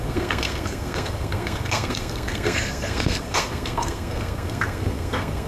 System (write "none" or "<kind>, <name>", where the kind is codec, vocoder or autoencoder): codec, SNAC